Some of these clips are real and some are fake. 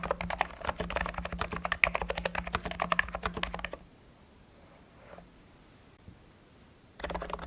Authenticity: real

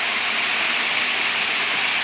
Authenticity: fake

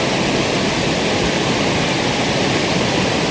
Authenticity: real